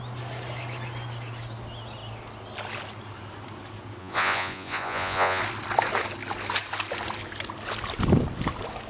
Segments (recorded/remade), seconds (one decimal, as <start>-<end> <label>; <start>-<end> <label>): 0.0-4.0 recorded; 4.0-5.4 remade; 5.4-8.9 recorded